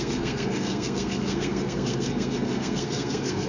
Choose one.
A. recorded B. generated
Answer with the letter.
B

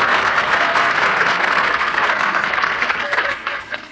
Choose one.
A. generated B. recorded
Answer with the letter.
A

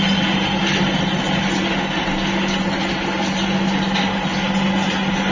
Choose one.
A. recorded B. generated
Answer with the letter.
A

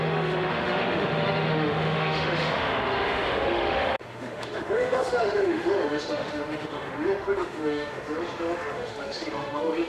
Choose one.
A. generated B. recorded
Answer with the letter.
A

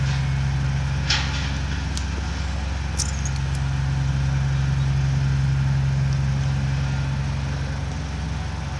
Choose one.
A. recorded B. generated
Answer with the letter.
A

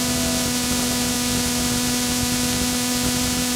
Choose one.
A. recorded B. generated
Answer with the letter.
A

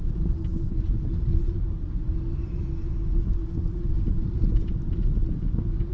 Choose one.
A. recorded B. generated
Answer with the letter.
A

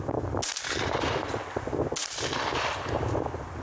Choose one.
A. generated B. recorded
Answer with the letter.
B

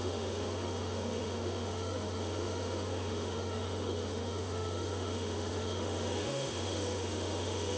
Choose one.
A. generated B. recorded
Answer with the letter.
A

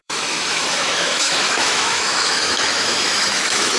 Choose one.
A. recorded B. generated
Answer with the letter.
B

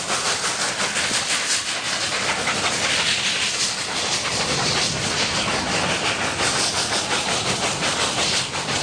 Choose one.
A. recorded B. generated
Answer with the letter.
A